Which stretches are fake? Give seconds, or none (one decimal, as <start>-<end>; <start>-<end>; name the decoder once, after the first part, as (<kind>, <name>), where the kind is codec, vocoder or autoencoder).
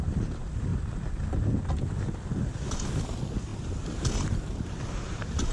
0.0-0.7 (vocoder, BigVGAN v2); 2.5-3.5; 4.1-5.5